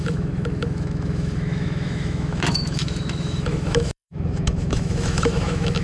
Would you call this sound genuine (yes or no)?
no